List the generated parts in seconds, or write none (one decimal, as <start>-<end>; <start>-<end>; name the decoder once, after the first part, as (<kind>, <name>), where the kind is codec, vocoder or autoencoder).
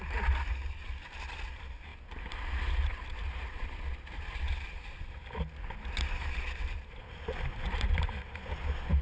none